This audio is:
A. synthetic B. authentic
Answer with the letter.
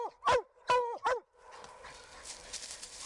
B